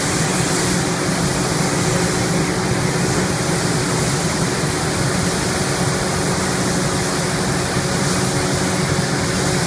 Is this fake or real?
real